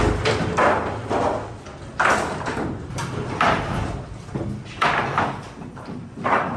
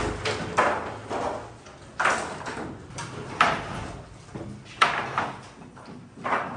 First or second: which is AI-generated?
first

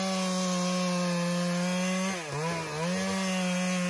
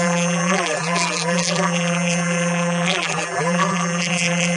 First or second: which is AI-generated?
second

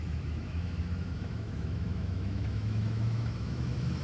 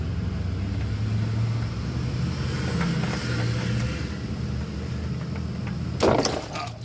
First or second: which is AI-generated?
first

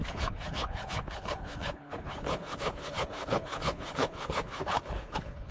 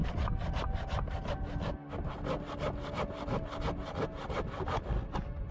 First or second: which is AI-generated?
first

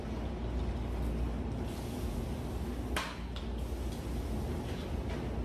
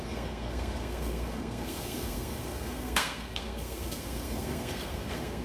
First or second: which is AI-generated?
second